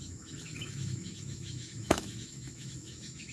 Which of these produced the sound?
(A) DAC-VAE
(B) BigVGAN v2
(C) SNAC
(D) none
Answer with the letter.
A